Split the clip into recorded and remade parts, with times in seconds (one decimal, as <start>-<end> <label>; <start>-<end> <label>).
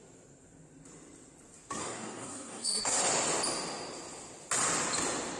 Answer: 0.0-1.8 recorded; 1.8-3.0 remade; 3.0-5.4 recorded